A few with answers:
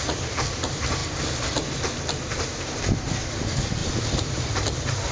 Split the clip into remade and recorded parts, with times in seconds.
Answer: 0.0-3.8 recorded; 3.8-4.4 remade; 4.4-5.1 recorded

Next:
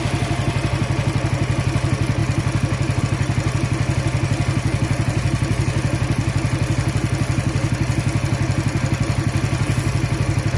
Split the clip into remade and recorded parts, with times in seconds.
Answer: 0.0-10.6 recorded

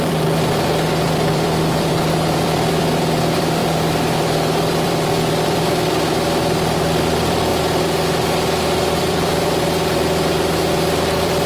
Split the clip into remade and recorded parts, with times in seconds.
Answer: 0.0-7.5 remade; 7.5-9.0 recorded; 9.0-11.5 remade

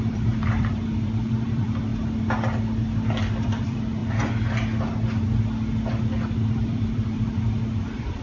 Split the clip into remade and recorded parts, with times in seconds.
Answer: 0.0-1.9 remade; 1.9-3.3 recorded; 3.3-4.0 remade; 4.0-6.5 recorded; 6.5-8.2 remade